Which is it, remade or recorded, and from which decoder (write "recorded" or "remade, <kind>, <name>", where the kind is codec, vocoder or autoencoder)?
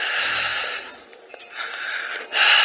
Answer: recorded